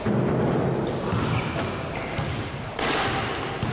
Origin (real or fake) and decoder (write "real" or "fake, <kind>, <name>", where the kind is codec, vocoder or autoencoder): real